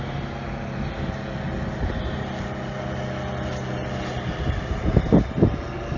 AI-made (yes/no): no